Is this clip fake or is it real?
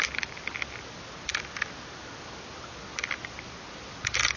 real